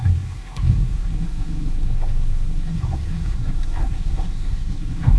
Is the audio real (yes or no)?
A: no